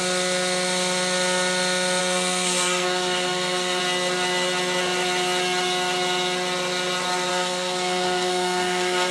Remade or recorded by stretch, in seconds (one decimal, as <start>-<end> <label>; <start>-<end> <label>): 0.0-2.0 recorded; 2.0-3.8 remade; 3.8-7.3 recorded; 7.3-9.1 remade